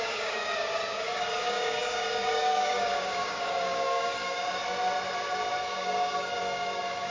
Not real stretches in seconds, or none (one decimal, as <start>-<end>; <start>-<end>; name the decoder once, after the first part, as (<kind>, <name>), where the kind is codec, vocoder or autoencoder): 0.0-4.6 (codec, DAC); 5.6-7.1